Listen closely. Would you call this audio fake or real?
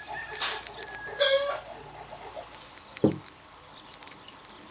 real